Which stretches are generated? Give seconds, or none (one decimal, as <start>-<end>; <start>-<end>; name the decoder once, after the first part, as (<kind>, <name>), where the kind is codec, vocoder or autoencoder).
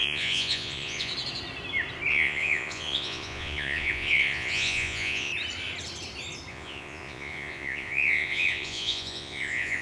0.0-1.1 (vocoder, Vocos); 2.1-5.3; 6.5-9.8